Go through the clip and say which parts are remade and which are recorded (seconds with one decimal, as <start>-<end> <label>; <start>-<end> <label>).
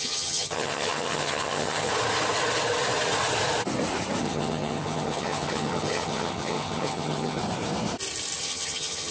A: 0.0-1.9 remade; 1.9-4.2 recorded; 4.2-7.4 remade; 7.4-8.4 recorded; 8.4-9.1 remade